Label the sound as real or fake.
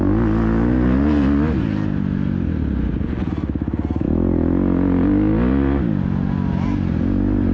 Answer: real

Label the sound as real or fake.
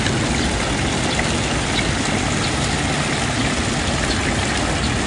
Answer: real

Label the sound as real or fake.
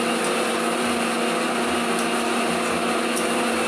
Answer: real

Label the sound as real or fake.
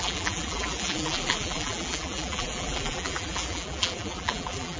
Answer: fake